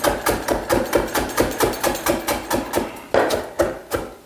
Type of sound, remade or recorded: recorded